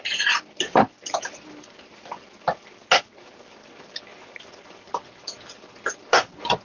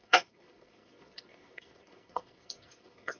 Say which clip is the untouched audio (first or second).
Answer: first